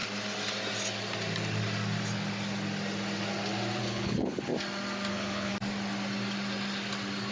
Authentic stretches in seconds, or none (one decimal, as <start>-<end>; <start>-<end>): 0.0-3.8; 4.5-5.1; 5.5-7.3